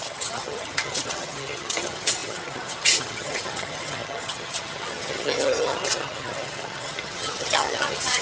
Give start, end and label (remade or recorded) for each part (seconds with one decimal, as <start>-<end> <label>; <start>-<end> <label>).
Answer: 0.0-8.2 remade